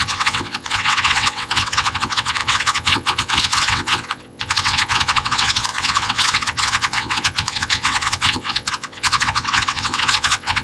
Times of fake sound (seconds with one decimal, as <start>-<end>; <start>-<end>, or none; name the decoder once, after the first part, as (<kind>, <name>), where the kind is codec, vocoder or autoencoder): 0.0-10.6 (vocoder, WaveNeXt)